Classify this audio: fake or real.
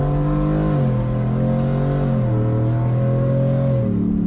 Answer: real